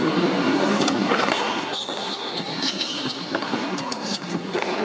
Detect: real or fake fake